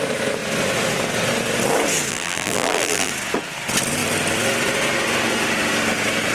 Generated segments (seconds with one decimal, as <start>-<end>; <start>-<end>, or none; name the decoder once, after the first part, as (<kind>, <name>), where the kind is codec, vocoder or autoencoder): 2.1-3.1 (vocoder, BigVGAN v2)